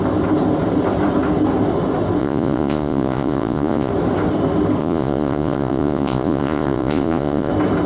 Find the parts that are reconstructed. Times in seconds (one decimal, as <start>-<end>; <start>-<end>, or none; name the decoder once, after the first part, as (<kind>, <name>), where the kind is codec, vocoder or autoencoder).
2.2-3.9 (vocoder, Vocos); 4.8-7.5